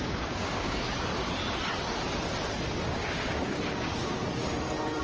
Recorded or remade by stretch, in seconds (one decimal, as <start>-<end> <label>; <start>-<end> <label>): 0.0-1.1 remade; 1.1-2.7 recorded; 2.7-4.2 remade; 4.2-5.0 recorded